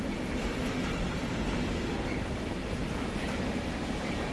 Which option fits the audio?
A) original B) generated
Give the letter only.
A